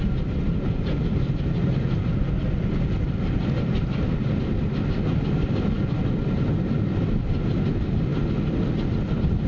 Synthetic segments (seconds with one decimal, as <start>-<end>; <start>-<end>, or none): none